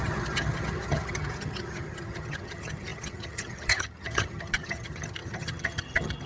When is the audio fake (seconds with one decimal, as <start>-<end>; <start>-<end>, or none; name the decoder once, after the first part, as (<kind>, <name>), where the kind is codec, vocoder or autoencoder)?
0.0-6.3 (vocoder, HiFi-GAN)